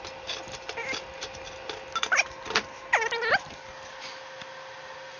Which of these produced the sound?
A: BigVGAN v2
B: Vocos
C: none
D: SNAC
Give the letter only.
C